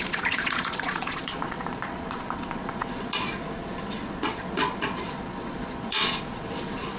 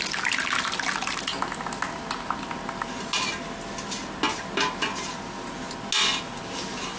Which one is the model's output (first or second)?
first